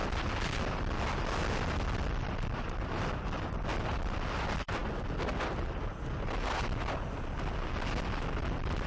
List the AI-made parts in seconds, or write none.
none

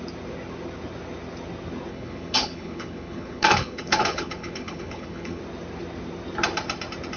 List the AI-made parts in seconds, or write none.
1.9-5.4 (codec, HILCodec)

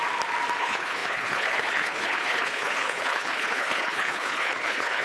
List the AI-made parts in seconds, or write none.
0.6-5.0 (codec, HILCodec)

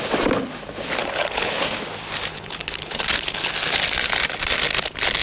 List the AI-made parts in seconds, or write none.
1.0-1.6 (codec, HILCodec); 2.3-3.5